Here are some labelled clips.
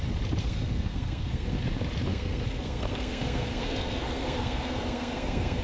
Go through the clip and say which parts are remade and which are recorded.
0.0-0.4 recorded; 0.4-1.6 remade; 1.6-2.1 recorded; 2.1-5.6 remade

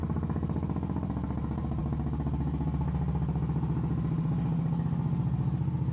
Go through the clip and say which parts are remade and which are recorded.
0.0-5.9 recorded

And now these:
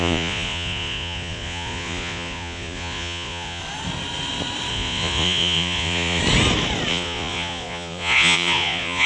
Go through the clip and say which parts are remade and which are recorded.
0.0-3.6 remade; 3.6-4.7 recorded; 4.7-6.2 remade; 6.2-6.9 recorded; 6.9-9.1 remade